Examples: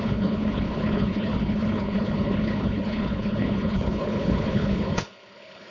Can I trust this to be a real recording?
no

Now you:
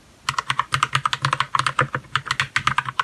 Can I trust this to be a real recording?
yes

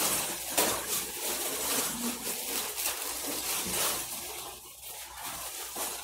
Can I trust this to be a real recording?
yes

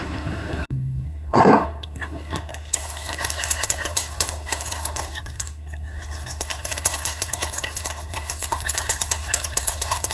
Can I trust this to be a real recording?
no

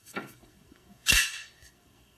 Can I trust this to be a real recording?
no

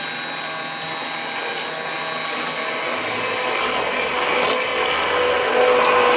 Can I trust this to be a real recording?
yes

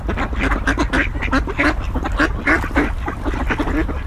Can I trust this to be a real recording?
yes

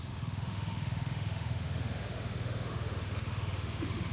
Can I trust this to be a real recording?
no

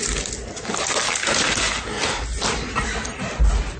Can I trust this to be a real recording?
yes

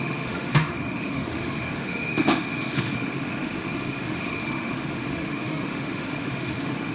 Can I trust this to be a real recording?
no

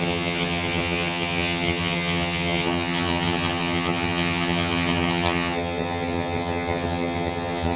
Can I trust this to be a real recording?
no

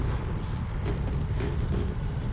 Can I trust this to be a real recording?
yes